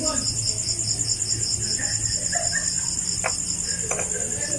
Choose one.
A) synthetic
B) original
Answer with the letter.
B